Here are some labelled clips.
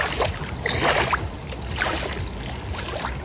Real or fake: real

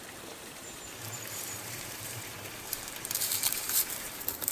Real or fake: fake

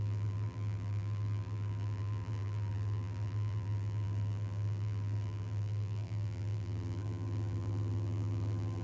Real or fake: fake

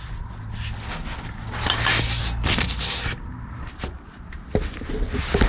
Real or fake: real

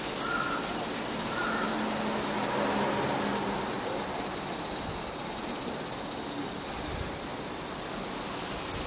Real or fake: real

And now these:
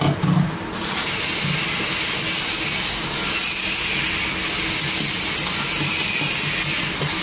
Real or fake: real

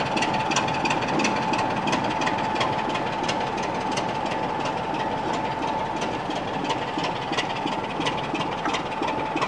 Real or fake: real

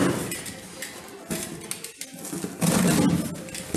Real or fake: real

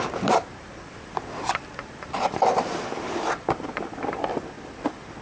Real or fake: fake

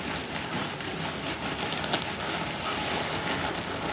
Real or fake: real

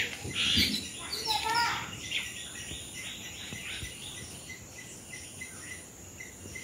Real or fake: real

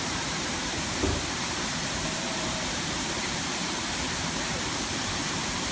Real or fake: fake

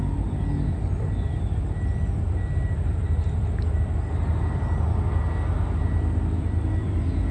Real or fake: real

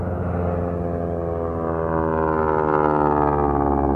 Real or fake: real